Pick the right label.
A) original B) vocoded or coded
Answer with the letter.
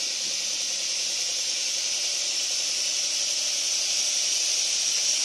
A